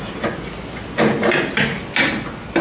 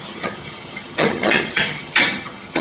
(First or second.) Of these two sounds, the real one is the first